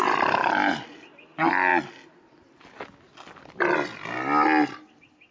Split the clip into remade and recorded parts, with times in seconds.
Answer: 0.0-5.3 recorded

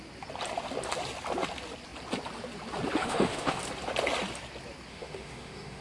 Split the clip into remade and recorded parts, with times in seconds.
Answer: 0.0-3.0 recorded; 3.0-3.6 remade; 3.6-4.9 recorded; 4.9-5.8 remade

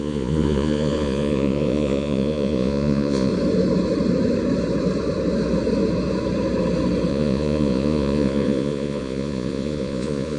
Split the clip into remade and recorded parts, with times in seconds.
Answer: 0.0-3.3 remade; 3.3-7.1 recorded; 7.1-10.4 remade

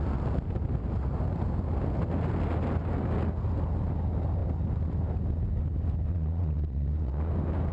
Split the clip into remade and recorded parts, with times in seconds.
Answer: 0.0-6.1 recorded; 6.1-7.3 remade; 7.3-7.7 recorded